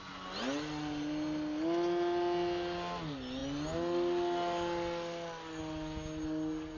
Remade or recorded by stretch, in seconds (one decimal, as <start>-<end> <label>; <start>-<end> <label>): 0.0-6.8 recorded